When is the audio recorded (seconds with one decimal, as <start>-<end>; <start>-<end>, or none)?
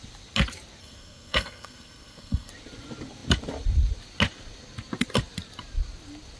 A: 0.0-0.8; 2.5-6.4